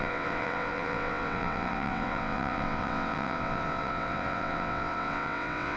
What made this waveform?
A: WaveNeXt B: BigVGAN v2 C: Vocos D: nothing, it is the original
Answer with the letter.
A